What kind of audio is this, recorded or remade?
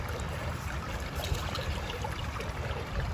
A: recorded